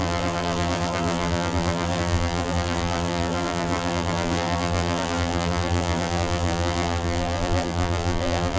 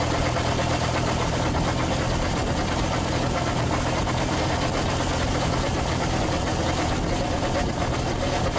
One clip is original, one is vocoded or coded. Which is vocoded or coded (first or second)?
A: first